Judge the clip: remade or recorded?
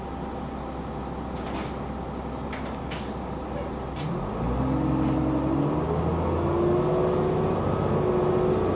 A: recorded